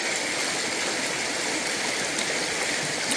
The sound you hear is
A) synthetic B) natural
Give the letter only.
B